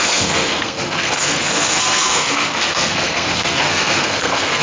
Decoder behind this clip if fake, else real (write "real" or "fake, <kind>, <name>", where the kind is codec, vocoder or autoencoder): fake, codec, SNAC